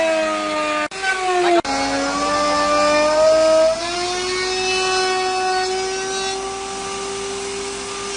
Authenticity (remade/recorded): recorded